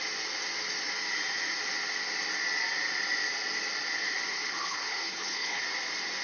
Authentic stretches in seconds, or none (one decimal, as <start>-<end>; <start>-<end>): 0.0-4.3; 5.6-6.2